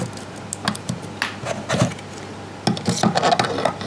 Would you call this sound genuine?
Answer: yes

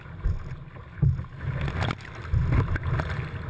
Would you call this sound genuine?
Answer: yes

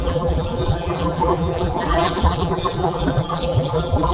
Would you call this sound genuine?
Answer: no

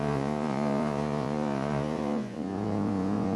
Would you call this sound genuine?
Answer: no